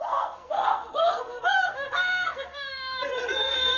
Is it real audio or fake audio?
fake